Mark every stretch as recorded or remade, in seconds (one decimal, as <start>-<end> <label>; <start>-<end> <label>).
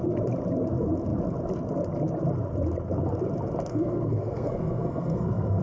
0.0-3.7 recorded; 3.7-5.6 remade